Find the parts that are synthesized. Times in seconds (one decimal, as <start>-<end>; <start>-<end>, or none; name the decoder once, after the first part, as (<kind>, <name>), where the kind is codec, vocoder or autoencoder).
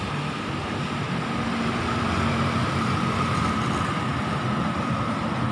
0.6-1.8 (vocoder, BigVGAN v2); 2.6-3.5; 4.1-4.9